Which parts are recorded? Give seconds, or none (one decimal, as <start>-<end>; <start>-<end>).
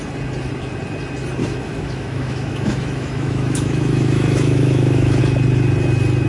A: 0.0-1.4; 5.2-6.3